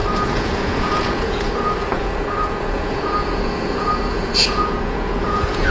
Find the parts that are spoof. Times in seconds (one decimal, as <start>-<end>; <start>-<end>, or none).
0.0-5.7